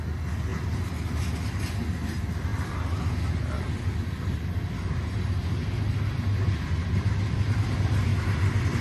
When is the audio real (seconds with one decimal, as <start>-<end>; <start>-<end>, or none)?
0.0-2.5; 3.1-8.8